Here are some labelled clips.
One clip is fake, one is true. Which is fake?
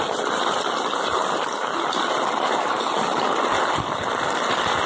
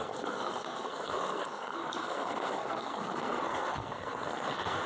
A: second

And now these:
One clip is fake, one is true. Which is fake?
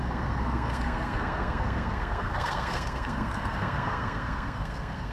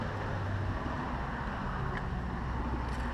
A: first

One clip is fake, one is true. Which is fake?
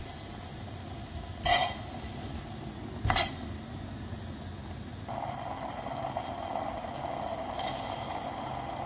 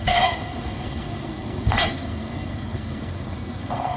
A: second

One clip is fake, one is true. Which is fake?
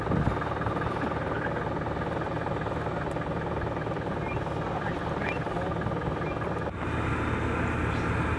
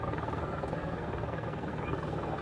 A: second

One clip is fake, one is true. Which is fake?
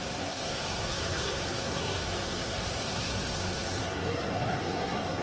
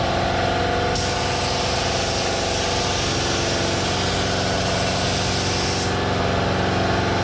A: first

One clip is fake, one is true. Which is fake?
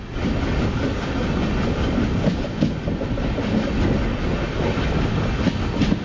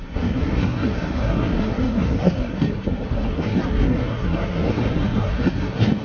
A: second